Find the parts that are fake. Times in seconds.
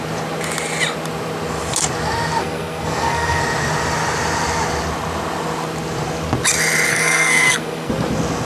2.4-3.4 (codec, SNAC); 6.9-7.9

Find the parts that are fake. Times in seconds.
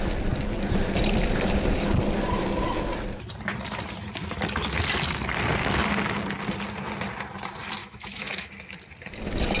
7.8-8.5 (autoencoder, DAC-VAE)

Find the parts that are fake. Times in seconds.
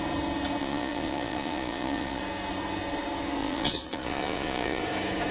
0.6-2.2 (vocoder, Vocos); 3.4-4.8